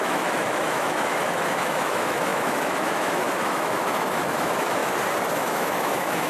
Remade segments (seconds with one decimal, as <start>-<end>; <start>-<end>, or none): 0.0-4.8; 5.3-6.3